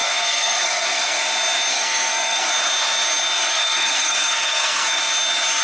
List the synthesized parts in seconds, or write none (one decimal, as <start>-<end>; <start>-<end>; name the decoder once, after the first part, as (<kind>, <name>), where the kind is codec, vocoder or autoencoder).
0.0-1.2 (codec, SNAC); 1.7-2.5; 3.5-5.0